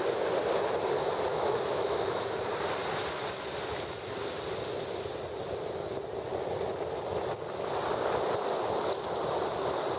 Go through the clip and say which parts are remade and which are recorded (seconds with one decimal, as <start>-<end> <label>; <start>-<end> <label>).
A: 0.0-1.3 recorded; 1.3-2.4 remade; 2.4-10.0 recorded